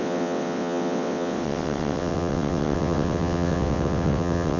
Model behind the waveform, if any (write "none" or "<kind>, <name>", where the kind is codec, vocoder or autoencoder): vocoder, WaveNeXt